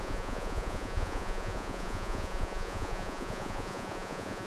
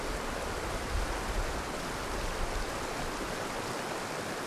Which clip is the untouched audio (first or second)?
second